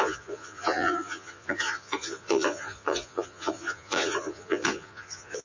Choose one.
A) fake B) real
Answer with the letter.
A